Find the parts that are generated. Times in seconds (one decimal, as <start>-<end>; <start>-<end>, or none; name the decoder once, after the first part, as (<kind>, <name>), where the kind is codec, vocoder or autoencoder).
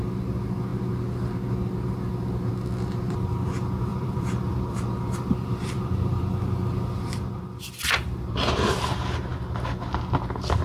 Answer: 3.9-8.7 (vocoder, BigVGAN v2)